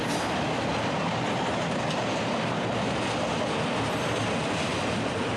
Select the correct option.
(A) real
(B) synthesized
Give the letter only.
A